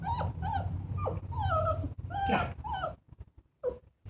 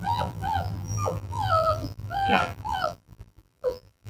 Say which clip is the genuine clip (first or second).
first